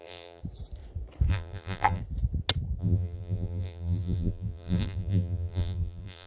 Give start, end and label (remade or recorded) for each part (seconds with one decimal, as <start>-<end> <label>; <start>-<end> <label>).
0.0-0.4 remade; 0.4-1.3 recorded; 1.3-2.0 remade; 2.0-2.8 recorded; 2.8-6.3 remade